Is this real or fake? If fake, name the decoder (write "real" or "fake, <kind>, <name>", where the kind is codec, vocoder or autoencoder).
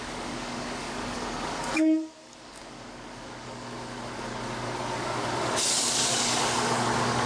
fake, codec, DAC